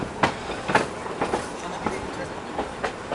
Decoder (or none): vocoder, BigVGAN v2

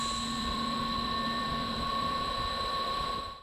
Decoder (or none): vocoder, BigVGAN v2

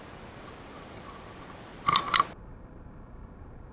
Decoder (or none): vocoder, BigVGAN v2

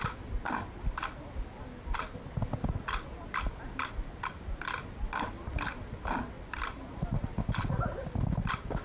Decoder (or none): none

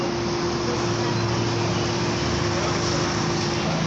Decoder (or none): none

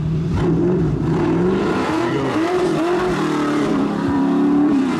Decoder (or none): vocoder, BigVGAN v2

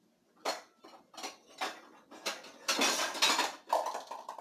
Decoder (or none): none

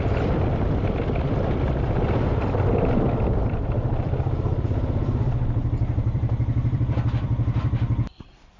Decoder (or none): vocoder, BigVGAN v2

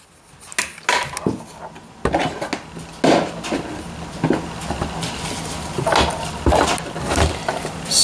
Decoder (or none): none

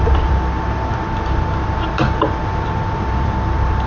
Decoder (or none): vocoder, BigVGAN v2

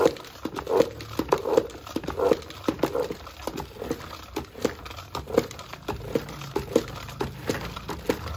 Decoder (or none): none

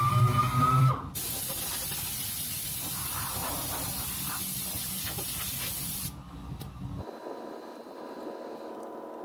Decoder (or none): none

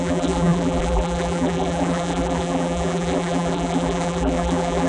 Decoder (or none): vocoder, BigVGAN v2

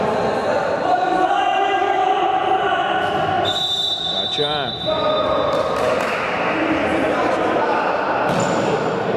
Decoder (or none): vocoder, BigVGAN v2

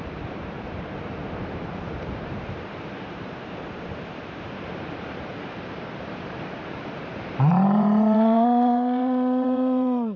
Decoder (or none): vocoder, BigVGAN v2